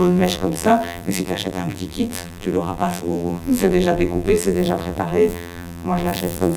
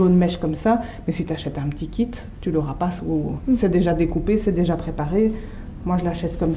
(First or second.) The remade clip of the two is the first